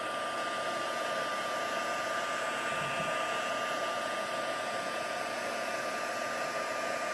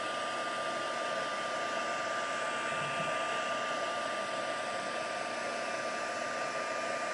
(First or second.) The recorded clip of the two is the second